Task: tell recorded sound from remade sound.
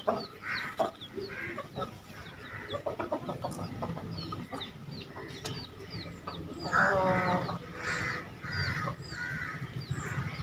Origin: recorded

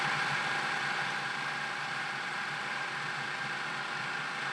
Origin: recorded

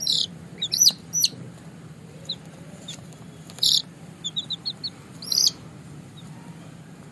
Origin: remade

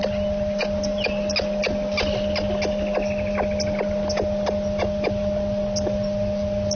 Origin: recorded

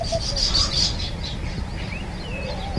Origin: remade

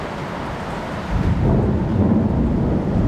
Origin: recorded